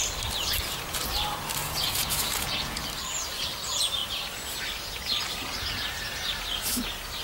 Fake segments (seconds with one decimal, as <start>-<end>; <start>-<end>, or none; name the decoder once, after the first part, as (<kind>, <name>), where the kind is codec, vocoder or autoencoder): 1.6-2.8 (vocoder, Vocos)